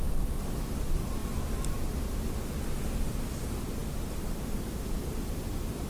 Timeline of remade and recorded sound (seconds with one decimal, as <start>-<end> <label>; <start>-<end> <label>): 0.0-5.9 recorded